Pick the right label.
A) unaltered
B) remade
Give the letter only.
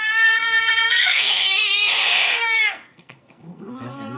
B